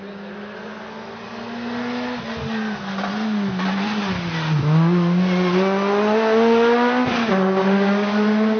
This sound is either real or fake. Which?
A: real